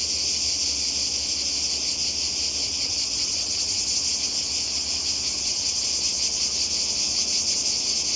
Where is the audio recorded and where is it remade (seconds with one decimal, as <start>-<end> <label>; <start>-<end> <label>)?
0.0-2.6 recorded; 2.6-4.0 remade; 4.0-5.3 recorded; 5.3-5.8 remade; 5.8-8.2 recorded